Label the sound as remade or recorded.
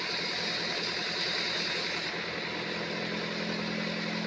recorded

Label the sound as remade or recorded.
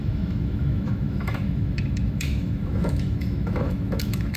remade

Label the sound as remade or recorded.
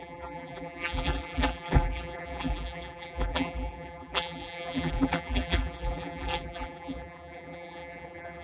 remade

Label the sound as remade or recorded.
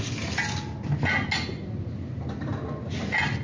recorded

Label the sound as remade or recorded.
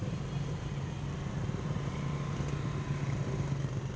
recorded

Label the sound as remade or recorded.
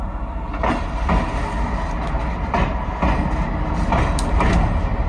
recorded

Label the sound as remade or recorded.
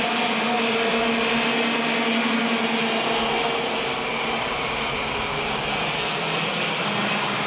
recorded